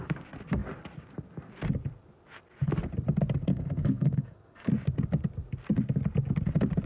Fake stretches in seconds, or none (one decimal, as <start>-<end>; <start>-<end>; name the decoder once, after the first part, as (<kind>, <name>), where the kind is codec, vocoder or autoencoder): 3.5-4.7 (codec, SNAC)